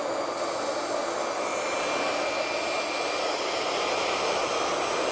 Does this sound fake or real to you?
real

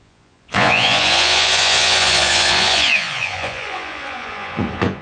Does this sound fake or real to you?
fake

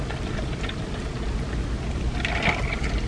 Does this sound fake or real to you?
real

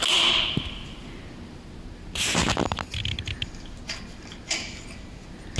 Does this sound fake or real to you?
real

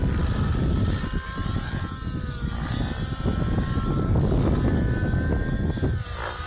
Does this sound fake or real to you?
real